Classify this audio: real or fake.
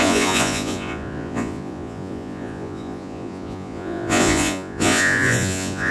fake